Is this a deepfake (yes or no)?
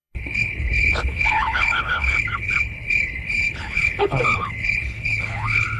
yes